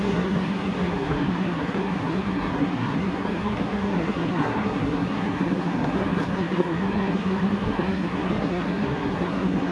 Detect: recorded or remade remade